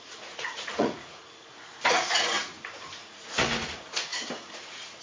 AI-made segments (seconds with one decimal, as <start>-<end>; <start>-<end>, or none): 0.0-5.0